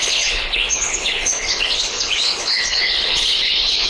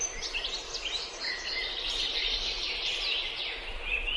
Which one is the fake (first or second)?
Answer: first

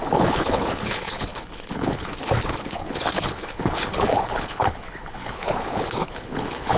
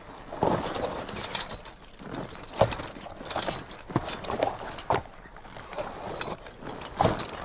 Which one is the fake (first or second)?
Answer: first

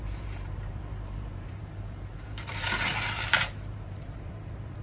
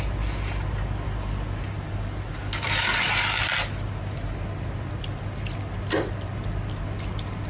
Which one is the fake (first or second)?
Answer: first